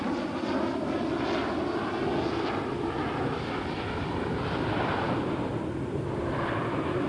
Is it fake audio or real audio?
real